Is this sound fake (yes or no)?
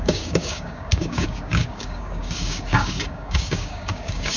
yes